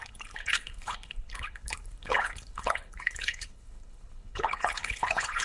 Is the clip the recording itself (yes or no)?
no